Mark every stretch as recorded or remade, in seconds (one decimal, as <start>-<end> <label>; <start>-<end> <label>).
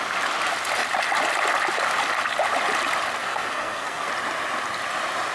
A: 0.0-3.2 recorded; 3.2-4.1 remade; 4.1-5.3 recorded